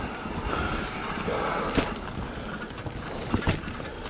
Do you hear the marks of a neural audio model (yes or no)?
no